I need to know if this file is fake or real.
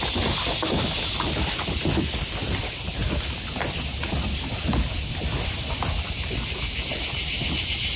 real